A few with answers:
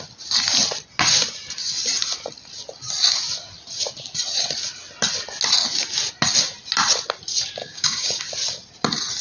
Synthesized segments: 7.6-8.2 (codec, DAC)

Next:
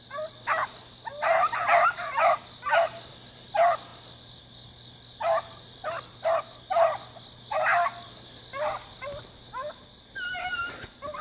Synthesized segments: none

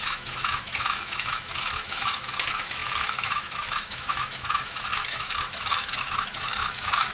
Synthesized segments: 0.0-7.1 (autoencoder, DAC-VAE)

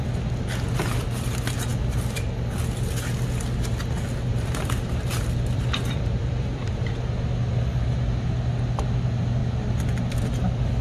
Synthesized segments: 4.3-6.9 (vocoder, BigVGAN v2)